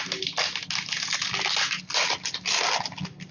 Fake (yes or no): no